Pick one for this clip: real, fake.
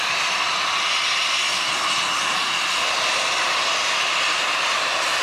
real